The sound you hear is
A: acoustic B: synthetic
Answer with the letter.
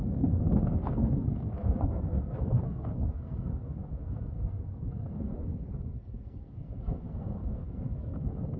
B